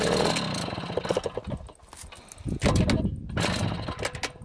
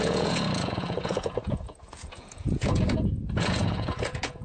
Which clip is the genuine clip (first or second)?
first